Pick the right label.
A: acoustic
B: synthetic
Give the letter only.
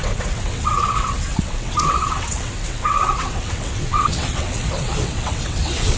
B